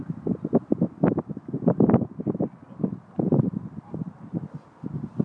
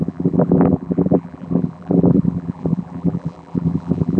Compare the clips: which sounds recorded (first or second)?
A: first